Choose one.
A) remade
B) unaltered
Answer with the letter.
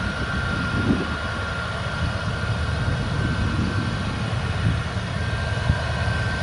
B